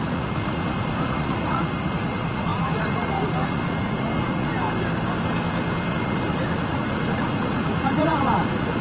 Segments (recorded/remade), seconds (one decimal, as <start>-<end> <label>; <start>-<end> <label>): 0.0-4.5 remade; 4.5-5.9 recorded; 5.9-8.8 remade